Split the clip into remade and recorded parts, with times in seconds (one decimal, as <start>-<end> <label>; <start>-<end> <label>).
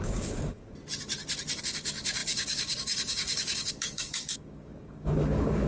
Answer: 0.0-0.6 remade; 0.6-1.6 recorded; 1.6-5.7 remade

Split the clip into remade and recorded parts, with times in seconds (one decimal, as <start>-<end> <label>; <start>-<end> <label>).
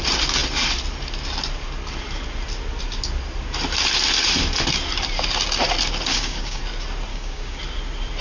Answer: 0.0-6.1 recorded; 6.1-6.6 remade; 6.6-7.1 recorded; 7.1-7.6 remade; 7.6-8.2 recorded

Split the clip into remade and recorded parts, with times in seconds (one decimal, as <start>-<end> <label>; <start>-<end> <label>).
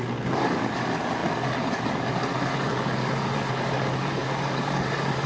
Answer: 0.0-5.3 remade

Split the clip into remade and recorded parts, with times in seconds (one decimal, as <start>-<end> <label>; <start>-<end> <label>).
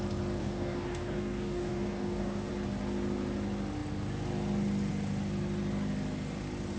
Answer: 0.0-0.4 recorded; 0.4-2.5 remade; 2.5-6.8 recorded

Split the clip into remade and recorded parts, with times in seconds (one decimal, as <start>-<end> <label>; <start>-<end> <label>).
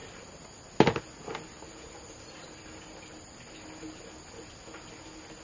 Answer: 0.0-5.4 recorded